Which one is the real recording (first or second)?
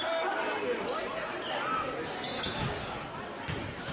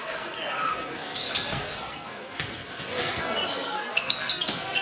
first